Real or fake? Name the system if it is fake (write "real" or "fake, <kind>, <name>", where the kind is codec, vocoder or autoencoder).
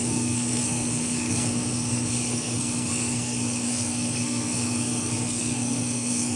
fake, codec, SNAC